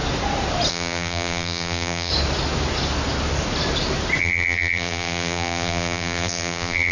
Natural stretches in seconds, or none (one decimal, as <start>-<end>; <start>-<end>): 0.0-0.7; 2.1-4.2

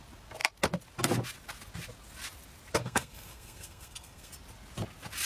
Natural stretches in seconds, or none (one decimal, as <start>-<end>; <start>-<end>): 0.0-2.8; 4.3-5.3